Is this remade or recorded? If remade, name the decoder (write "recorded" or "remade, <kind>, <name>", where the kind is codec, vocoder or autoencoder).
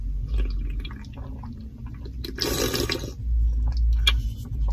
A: recorded